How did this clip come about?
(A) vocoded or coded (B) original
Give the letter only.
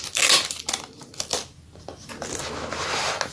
B